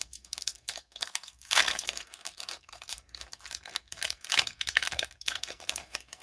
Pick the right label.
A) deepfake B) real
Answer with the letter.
A